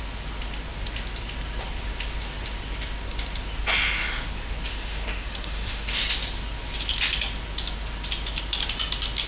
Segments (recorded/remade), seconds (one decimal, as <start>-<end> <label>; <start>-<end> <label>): 0.0-4.7 recorded; 4.7-6.0 remade; 6.0-9.3 recorded